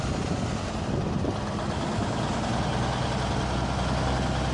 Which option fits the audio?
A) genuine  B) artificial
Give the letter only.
A